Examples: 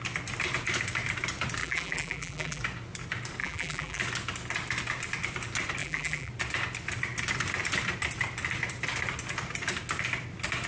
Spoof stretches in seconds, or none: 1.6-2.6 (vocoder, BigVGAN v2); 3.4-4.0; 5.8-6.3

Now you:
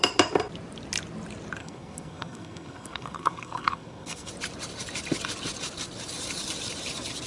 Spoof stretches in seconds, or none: 1.6-4.3 (codec, SNAC)